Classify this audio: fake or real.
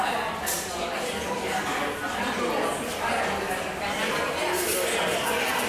real